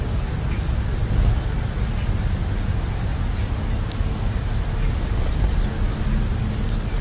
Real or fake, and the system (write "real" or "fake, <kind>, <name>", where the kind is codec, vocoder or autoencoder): real